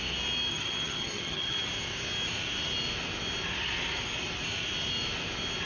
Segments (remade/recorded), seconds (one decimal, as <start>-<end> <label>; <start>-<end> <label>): 0.0-0.5 recorded; 0.5-1.7 remade; 1.7-5.7 recorded

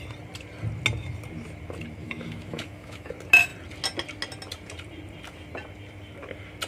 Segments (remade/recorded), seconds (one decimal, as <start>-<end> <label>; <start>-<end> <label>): 0.0-2.0 recorded; 2.0-3.1 remade; 3.1-6.7 recorded

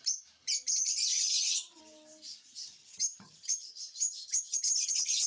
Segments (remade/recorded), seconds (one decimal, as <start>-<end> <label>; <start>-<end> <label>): 0.0-1.1 recorded; 1.1-1.8 remade; 1.8-2.8 recorded; 2.8-5.3 remade

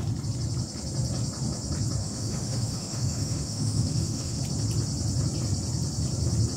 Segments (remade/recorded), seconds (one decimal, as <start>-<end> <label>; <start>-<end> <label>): 0.0-2.0 recorded; 2.0-4.4 remade; 4.4-6.6 recorded

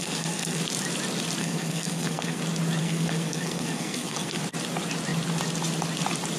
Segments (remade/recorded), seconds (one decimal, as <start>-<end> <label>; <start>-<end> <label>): 0.0-0.6 remade; 0.6-1.4 recorded; 1.4-2.4 remade; 2.4-2.8 recorded; 2.8-4.4 remade; 4.4-6.4 recorded

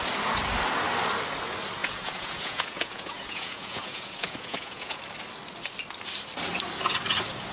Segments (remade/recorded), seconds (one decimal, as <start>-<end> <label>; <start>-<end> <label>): 0.0-1.8 recorded; 1.8-5.0 remade; 5.0-7.5 recorded

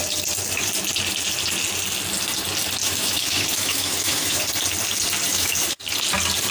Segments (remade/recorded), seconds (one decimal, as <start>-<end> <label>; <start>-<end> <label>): 0.0-2.8 recorded; 2.8-4.4 remade; 4.4-5.3 recorded; 5.3-5.8 remade; 5.8-6.5 recorded

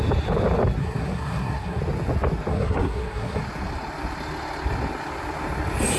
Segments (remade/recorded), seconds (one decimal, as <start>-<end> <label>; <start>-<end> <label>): 0.0-0.8 recorded; 0.8-1.8 remade; 1.8-2.5 recorded; 2.5-3.4 remade; 3.4-6.0 recorded